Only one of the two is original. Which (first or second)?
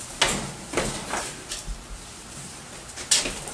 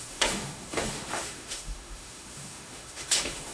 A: first